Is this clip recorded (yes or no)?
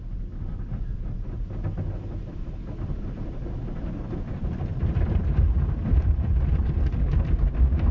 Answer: yes